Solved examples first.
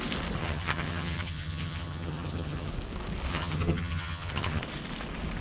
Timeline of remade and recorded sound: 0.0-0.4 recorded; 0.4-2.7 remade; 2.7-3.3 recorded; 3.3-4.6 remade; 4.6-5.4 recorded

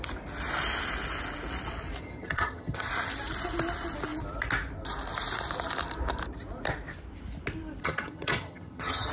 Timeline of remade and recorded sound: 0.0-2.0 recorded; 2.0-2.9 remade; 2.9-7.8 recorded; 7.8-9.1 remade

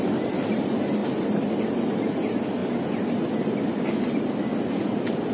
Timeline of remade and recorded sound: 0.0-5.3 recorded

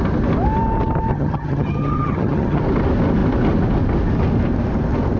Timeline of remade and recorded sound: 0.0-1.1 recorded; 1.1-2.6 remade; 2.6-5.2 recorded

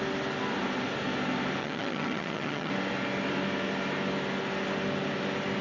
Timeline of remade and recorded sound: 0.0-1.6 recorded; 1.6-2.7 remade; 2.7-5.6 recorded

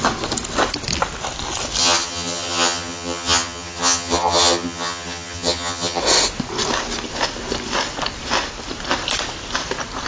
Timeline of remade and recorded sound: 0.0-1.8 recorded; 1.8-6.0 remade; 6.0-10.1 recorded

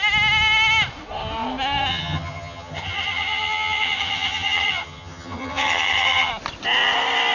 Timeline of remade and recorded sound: 0.0-1.9 recorded; 1.9-6.3 remade; 6.3-7.3 recorded

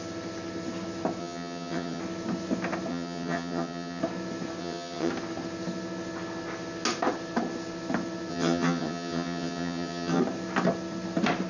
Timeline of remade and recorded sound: 0.0-1.2 recorded; 1.2-2.0 remade; 2.0-2.9 recorded; 2.9-4.0 remade; 4.0-4.6 recorded; 4.6-5.1 remade; 5.1-8.3 recorded; 8.3-10.2 remade; 10.2-11.5 recorded